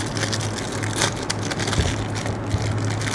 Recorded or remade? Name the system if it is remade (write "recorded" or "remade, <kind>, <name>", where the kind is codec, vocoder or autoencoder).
recorded